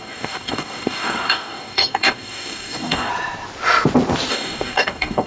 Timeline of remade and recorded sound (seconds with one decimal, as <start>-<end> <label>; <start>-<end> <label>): 0.0-3.1 remade; 3.1-4.3 recorded; 4.3-5.3 remade